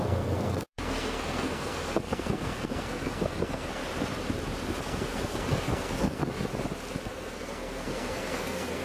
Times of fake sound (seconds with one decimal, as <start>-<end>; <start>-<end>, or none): 0.0-3.8; 4.8-6.5; 7.0-8.8